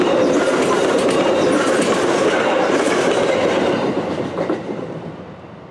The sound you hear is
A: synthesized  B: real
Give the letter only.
B